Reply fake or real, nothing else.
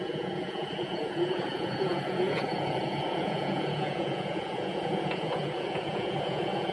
fake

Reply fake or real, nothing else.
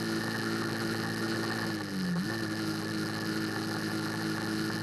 real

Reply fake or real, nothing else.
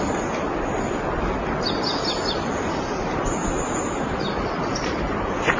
real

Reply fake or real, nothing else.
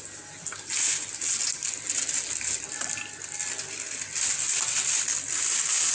real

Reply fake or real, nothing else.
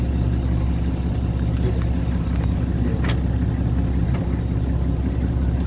real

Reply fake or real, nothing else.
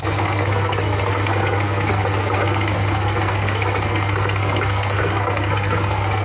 fake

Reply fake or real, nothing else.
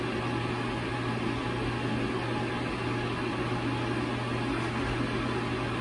real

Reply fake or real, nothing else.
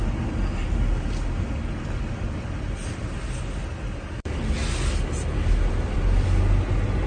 real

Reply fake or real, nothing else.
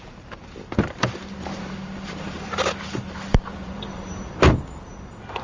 fake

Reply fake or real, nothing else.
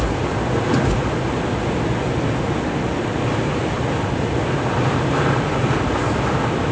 real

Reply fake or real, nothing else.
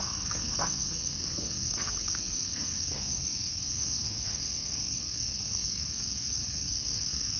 fake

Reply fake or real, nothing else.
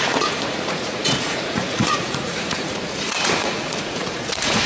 fake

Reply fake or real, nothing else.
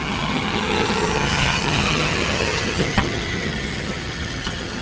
fake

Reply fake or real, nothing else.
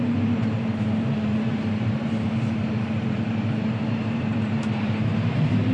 fake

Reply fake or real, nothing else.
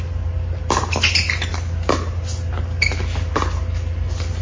real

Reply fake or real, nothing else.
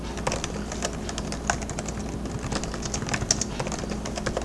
real